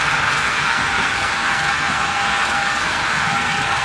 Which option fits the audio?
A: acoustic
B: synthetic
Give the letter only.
B